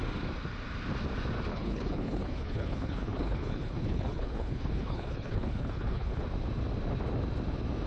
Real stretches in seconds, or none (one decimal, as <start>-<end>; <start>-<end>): 0.0-1.5; 6.2-7.9